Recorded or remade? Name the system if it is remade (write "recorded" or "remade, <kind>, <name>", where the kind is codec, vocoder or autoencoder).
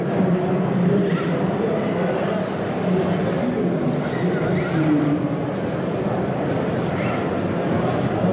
recorded